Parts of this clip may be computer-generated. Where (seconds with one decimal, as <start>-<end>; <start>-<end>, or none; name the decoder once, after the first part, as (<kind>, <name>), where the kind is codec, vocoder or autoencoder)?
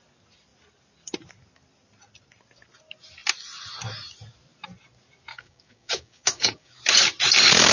5.3-6.8 (codec, DAC)